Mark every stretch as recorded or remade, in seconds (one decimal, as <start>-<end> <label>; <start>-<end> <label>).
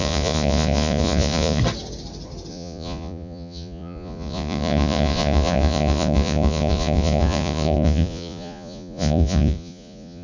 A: 0.0-1.6 remade; 1.6-2.5 recorded; 2.5-10.2 remade